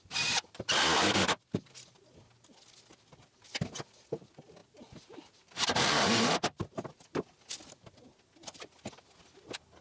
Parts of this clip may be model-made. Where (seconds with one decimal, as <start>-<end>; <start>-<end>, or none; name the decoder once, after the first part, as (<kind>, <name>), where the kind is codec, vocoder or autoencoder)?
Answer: none